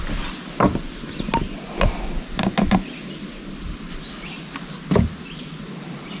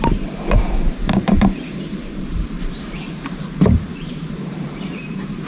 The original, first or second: first